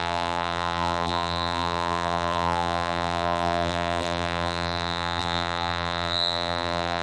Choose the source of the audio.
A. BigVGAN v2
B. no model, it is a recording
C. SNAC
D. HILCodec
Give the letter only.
A